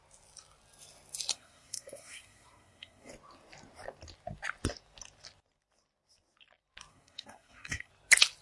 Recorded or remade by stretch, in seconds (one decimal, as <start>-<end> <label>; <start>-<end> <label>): 0.0-1.3 recorded; 1.3-3.1 remade; 3.1-6.9 recorded; 6.9-7.9 remade; 7.9-8.4 recorded